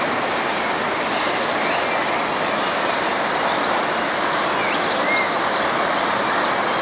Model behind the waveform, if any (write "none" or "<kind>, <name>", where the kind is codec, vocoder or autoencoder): none